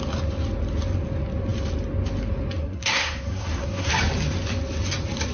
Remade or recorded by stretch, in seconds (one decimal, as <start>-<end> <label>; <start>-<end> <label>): 0.0-2.6 recorded; 2.6-3.9 remade; 3.9-5.3 recorded

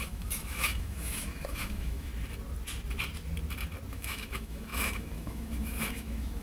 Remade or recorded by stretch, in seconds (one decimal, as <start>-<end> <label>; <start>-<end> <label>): 0.0-2.1 remade; 2.1-3.9 recorded; 3.9-6.4 remade

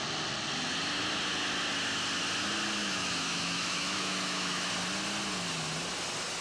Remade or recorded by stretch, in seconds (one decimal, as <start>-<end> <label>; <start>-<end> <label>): 0.0-2.8 recorded; 2.8-4.7 remade; 4.7-6.4 recorded

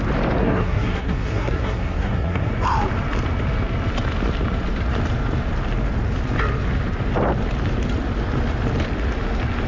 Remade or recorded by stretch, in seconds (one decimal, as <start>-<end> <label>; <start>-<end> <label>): 0.0-0.4 recorded; 0.4-2.5 remade; 2.5-9.7 recorded

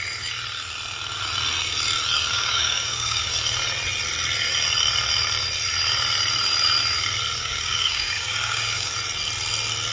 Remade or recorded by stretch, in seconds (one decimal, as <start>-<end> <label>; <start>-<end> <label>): 0.0-2.3 recorded; 2.3-3.3 remade; 3.3-7.4 recorded; 7.4-8.9 remade; 8.9-9.9 recorded

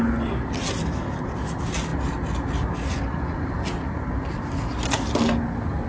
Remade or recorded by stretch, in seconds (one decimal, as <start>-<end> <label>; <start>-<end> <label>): 0.0-5.9 recorded

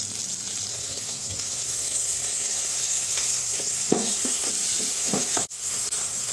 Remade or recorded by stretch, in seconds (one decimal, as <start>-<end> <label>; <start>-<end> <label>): 0.0-0.7 recorded; 0.7-4.5 remade; 4.5-4.9 recorded; 4.9-6.3 remade

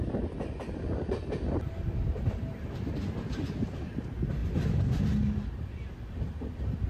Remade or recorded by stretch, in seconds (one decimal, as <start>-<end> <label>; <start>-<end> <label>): 0.0-6.9 recorded